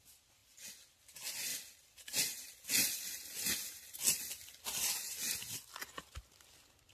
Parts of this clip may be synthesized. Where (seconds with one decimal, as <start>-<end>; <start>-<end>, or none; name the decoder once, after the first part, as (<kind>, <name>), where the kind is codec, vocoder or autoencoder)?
none